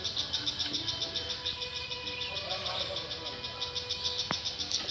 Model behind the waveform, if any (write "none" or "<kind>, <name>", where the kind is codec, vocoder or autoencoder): none